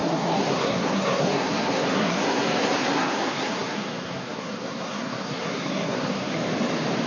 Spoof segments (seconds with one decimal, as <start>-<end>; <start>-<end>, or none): 0.0-6.4